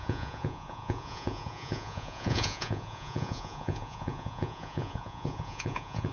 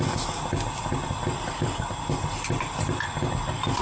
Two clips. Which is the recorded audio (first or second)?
second